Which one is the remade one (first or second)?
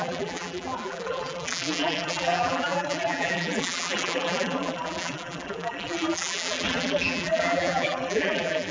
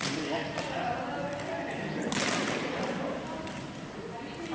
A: first